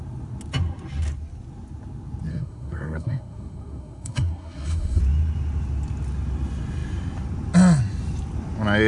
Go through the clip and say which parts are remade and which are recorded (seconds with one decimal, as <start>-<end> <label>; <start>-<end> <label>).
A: 0.0-2.3 recorded; 2.3-5.0 remade; 5.0-8.9 recorded